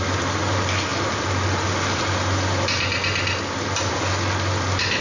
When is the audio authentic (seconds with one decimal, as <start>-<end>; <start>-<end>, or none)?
0.0-5.0